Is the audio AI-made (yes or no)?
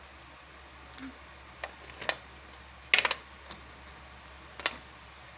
no